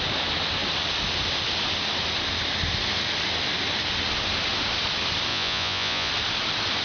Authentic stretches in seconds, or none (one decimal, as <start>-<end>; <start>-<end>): 0.0-5.3; 6.1-6.8